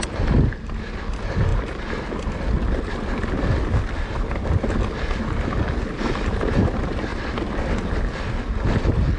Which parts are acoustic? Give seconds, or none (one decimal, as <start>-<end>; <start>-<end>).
0.0-7.1; 8.4-9.2